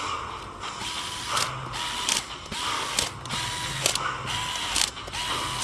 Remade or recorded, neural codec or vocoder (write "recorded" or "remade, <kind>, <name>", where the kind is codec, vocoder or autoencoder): recorded